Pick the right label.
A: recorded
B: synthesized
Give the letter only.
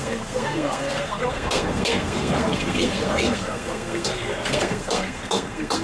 B